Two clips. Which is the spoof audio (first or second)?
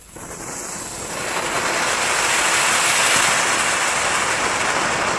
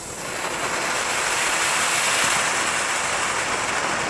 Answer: second